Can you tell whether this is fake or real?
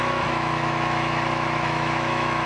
fake